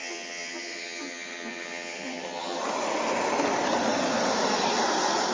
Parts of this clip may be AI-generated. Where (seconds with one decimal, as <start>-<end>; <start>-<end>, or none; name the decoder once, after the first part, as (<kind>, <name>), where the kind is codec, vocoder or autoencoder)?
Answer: 0.0-2.6 (vocoder, HiFi-GAN)